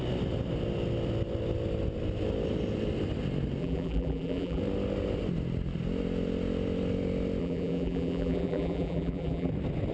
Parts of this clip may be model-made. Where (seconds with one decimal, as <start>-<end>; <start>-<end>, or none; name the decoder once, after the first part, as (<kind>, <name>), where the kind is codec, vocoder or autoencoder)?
3.6-4.6 (vocoder, BigVGAN v2); 7.4-9.5